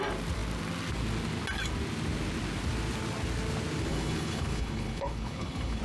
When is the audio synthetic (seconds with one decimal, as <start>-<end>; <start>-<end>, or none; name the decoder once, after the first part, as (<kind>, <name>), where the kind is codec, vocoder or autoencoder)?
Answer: 3.9-5.8 (codec, HILCodec)